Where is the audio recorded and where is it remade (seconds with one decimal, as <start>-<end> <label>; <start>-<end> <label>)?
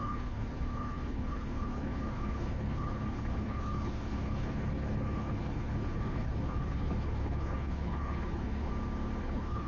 0.0-8.7 remade; 8.7-9.2 recorded; 9.2-9.7 remade